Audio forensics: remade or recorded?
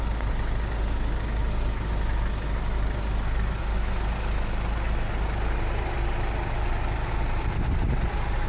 recorded